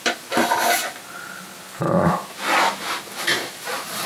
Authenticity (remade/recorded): remade